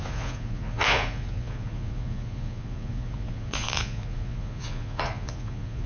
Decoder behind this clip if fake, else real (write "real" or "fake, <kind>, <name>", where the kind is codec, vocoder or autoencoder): fake, vocoder, Vocos